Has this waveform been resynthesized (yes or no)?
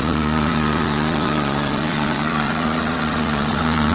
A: yes